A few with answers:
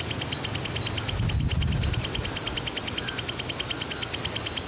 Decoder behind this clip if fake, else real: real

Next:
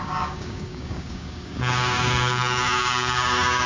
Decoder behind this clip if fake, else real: fake, codec, DAC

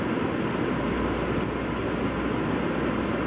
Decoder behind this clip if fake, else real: real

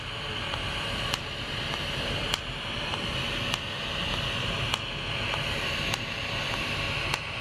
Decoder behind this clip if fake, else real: real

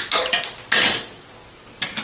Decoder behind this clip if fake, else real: real